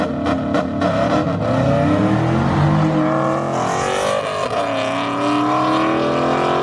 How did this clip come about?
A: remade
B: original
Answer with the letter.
B